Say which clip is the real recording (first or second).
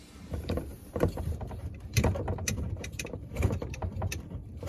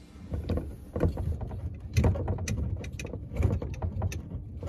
second